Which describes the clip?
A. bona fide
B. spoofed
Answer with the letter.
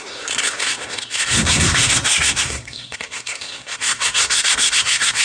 B